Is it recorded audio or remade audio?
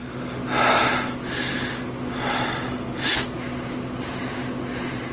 recorded